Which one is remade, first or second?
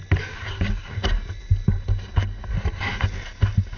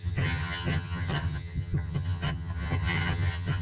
second